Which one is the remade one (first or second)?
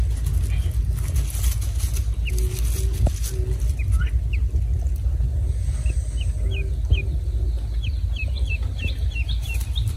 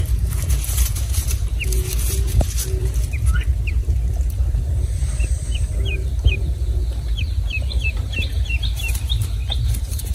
second